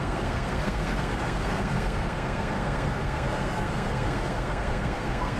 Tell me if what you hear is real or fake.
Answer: fake